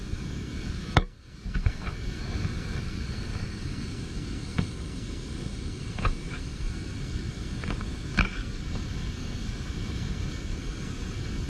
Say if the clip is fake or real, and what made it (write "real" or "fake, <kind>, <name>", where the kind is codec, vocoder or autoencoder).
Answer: fake, codec, SNAC